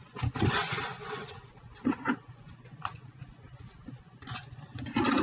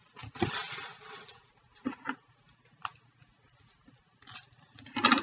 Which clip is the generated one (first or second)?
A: first